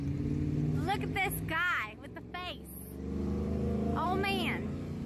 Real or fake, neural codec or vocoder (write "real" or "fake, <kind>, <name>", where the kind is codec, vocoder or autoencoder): real